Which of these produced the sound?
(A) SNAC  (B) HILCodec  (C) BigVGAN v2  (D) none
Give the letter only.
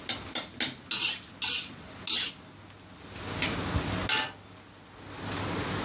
D